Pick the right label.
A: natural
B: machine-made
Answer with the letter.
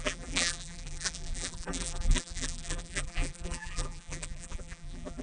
B